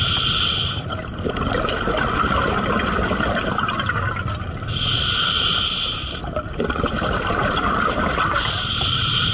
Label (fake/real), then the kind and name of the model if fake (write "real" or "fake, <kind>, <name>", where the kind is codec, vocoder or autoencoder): real